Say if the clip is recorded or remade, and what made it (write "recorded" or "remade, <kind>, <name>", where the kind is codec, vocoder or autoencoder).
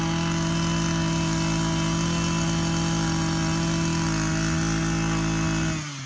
recorded